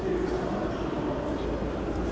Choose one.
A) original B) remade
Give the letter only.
A